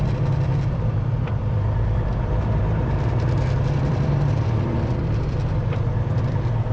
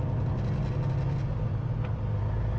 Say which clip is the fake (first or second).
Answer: first